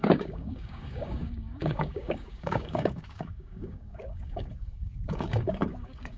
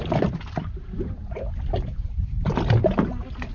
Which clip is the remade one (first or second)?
first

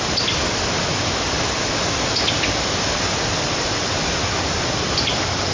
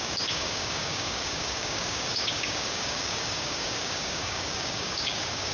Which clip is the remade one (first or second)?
second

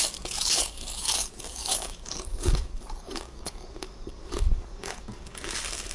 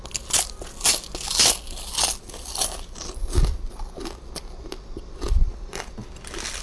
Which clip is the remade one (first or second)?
first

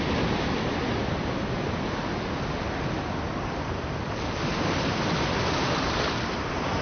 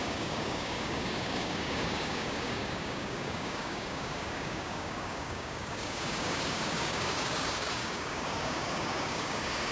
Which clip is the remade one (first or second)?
second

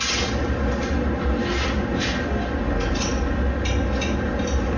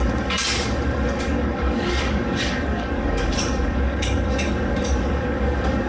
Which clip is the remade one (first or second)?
second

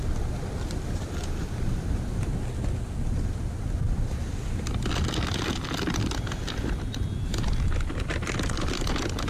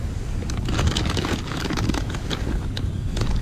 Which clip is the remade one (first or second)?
second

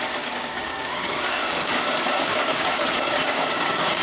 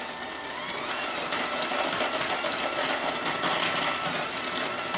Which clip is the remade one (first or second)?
first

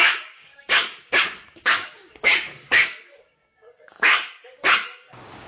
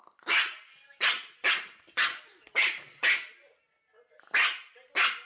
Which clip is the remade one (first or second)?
first